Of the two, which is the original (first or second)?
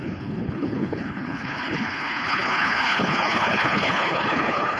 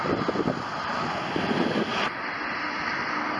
second